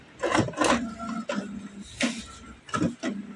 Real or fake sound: real